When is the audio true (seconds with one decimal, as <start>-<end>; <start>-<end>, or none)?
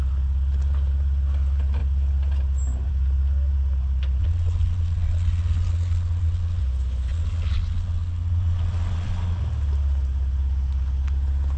0.0-4.2; 6.6-7.1; 9.4-11.6